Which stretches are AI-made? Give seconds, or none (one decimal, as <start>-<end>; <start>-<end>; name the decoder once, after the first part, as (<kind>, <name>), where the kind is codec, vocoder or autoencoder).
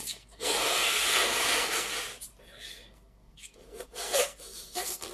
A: 0.0-1.9 (codec, SNAC); 2.4-5.1